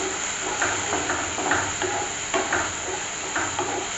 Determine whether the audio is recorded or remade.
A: recorded